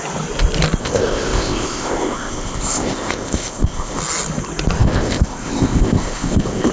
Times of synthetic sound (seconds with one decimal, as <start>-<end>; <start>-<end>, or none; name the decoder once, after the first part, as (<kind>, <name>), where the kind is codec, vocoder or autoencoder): 0.8-4.0 (codec, ZipCodec); 4.8-6.7